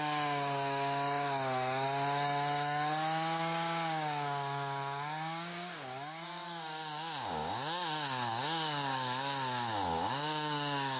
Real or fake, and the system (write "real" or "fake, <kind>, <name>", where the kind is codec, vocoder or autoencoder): fake, codec, DAC